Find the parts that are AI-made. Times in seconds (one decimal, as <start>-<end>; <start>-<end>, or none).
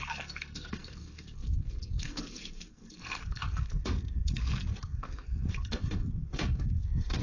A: 0.0-7.2